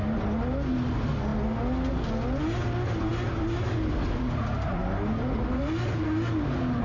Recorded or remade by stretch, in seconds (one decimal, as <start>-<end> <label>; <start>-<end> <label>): 0.0-6.8 recorded